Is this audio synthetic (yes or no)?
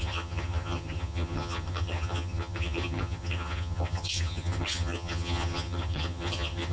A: yes